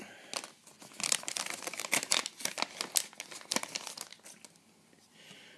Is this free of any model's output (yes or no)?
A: yes